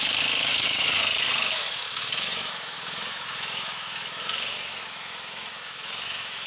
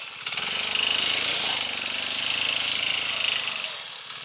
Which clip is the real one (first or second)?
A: second